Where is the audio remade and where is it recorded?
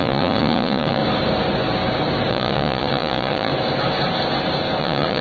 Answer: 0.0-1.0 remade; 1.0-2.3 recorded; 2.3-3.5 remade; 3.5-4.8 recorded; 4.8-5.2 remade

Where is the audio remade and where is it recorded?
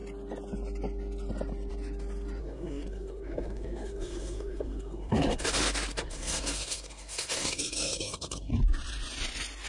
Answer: 0.0-2.4 recorded; 2.4-5.5 remade; 5.5-5.9 recorded; 5.9-8.5 remade; 8.5-9.7 recorded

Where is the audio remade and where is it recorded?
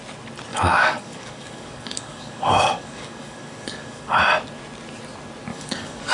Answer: 0.0-0.5 recorded; 0.5-4.2 remade; 4.2-5.5 recorded; 5.5-6.1 remade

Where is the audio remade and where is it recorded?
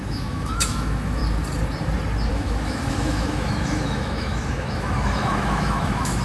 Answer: 0.0-1.2 remade; 1.2-2.3 recorded; 2.3-6.2 remade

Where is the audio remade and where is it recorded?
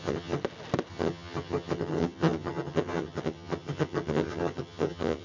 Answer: 0.0-0.4 remade; 0.4-0.9 recorded; 0.9-5.2 remade